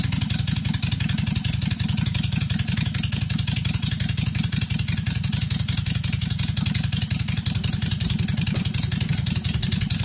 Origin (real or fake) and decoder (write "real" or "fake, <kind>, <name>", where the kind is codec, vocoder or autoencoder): real